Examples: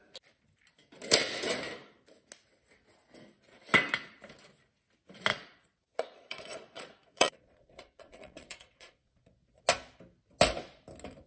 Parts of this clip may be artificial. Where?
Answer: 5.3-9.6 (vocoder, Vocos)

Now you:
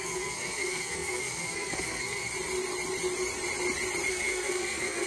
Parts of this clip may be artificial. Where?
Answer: 0.0-2.3 (codec, SNAC); 4.1-5.1

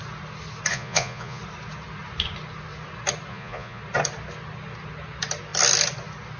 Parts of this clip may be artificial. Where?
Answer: 0.7-1.4 (vocoder, Vocos); 3.3-3.8

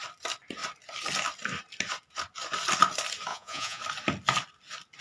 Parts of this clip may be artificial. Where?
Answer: 3.3-3.8 (vocoder, Vocos)

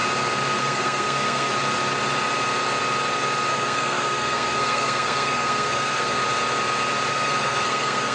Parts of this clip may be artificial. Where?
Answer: 0.6-1.5 (codec, SNAC); 3.5-6.2; 7.1-8.1

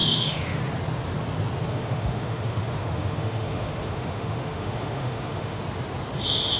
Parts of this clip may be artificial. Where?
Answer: 0.0-0.6 (autoencoder, DAC-VAE); 1.6-5.6

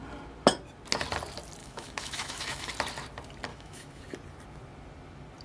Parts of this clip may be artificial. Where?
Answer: 1.6-2.7 (autoencoder, DAC-VAE); 3.5-4.0